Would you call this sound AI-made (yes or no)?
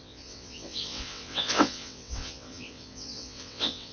yes